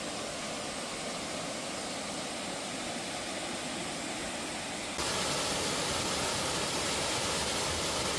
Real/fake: real